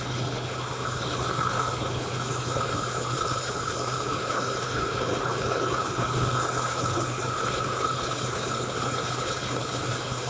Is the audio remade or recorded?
remade